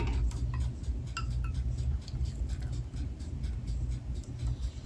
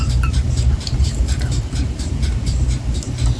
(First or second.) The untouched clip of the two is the first